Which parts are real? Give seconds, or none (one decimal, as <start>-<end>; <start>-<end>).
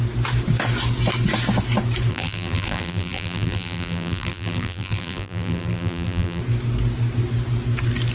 0.0-2.1; 6.4-8.1